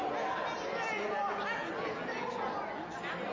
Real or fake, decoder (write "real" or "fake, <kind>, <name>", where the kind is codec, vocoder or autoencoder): real